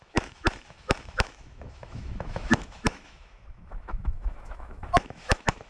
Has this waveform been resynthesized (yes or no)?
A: yes